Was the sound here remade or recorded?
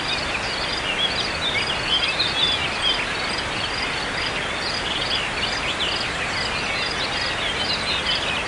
recorded